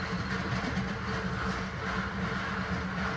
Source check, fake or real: real